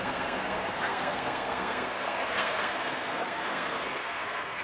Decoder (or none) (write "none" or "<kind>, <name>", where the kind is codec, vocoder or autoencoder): codec, SNAC